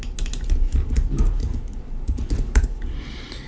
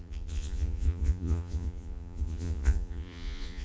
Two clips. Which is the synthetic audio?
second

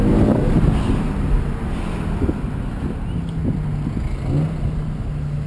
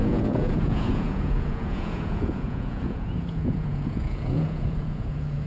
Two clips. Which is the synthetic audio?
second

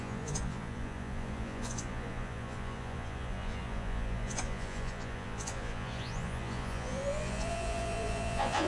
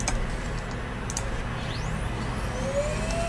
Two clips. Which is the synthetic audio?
first